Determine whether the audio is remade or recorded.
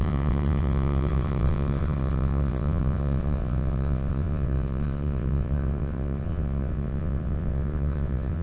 remade